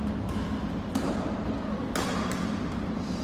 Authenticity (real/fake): real